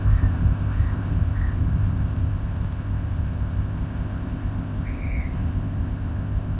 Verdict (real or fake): fake